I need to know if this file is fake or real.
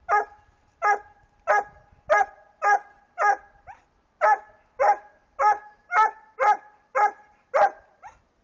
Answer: real